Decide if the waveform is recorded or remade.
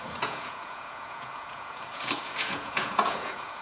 remade